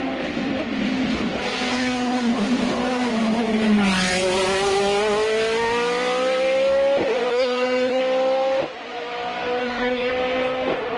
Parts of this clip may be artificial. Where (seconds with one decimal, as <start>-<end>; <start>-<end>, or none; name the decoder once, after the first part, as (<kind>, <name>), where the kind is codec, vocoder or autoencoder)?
1.7-2.3 (codec, SNAC); 7.3-8.0; 9.6-10.1